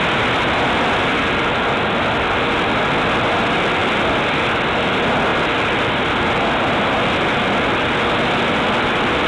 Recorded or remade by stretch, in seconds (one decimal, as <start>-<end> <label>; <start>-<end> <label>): 0.0-9.3 recorded